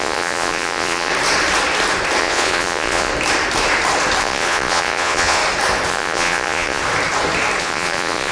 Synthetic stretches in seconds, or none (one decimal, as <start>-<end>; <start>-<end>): 0.0-1.1; 2.2-3.1; 4.2-5.4; 5.9-6.8; 7.6-8.3